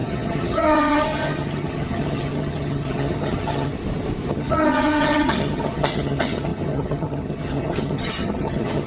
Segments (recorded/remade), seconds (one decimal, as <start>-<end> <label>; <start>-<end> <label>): 0.0-3.7 remade; 3.7-4.3 recorded; 4.3-8.9 remade

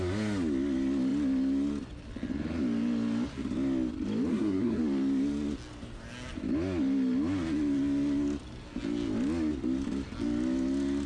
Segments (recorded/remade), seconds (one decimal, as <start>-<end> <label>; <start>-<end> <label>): 0.0-4.3 recorded; 4.3-4.8 remade; 4.8-11.1 recorded

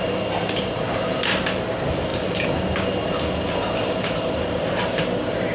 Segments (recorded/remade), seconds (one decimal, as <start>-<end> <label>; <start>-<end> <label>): 0.0-5.5 recorded